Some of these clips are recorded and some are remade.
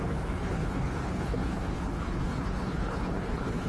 remade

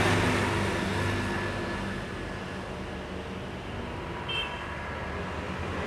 recorded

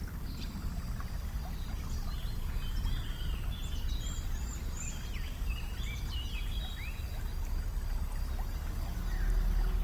recorded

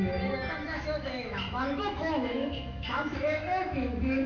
remade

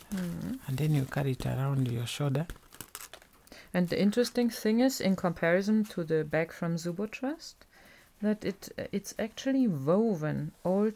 recorded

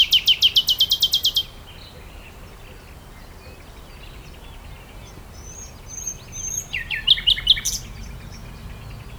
recorded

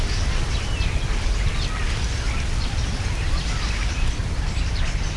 recorded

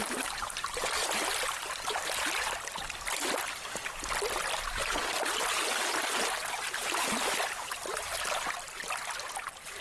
recorded